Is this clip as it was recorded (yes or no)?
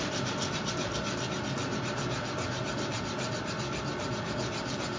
yes